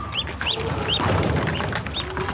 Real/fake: real